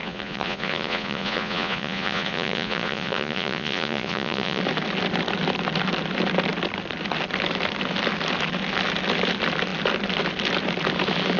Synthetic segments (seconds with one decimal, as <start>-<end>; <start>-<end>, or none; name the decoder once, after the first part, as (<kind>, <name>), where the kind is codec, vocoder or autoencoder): 0.0-4.6 (vocoder, Vocos)